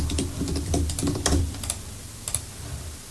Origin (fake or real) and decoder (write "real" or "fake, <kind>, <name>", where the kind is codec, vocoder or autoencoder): real